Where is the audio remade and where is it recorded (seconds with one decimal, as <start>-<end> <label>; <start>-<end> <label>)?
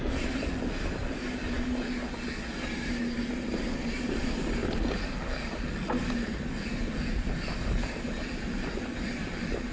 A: 0.0-9.7 recorded